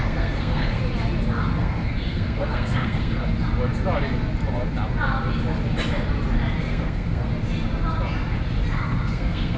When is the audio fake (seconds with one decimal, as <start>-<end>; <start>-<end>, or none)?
0.0-0.8; 1.6-3.2; 6.6-7.3; 8.7-9.6